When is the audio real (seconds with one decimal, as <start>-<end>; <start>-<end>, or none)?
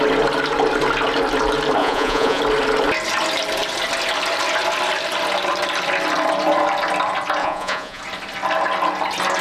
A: 0.0-1.8; 2.4-7.4; 8.0-9.4